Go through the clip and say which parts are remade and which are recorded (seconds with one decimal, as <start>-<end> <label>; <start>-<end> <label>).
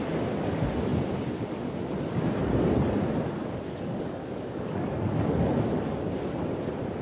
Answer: 0.0-3.4 recorded; 3.4-5.7 remade; 5.7-7.0 recorded